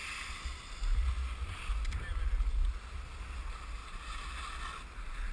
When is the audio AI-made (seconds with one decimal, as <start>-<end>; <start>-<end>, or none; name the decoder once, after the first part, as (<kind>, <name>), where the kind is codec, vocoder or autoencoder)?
3.8-4.3 (vocoder, BigVGAN v2)